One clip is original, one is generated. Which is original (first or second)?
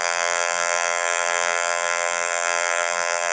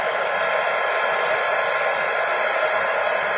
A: second